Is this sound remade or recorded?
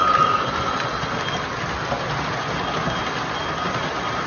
recorded